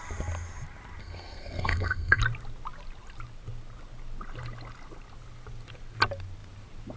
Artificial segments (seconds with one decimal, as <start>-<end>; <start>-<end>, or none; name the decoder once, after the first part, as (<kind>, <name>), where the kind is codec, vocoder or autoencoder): 1.0-2.2 (codec, SNAC)